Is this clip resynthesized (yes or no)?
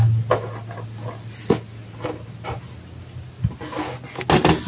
no